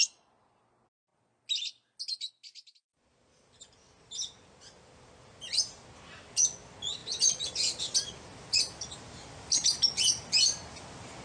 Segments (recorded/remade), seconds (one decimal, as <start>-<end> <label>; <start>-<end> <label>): 0.0-11.2 recorded